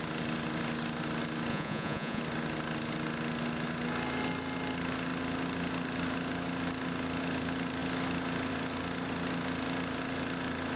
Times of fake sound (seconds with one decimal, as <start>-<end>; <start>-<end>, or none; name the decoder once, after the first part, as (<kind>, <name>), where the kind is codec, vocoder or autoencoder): 1.5-2.2 (vocoder, Vocos)